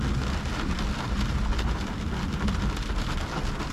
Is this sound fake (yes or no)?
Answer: no